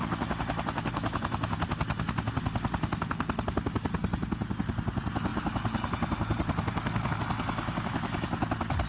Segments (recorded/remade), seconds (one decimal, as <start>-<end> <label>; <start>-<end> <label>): 0.0-8.9 recorded